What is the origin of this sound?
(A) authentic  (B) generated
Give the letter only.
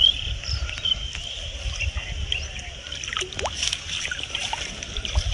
A